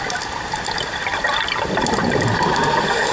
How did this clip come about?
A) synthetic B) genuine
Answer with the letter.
B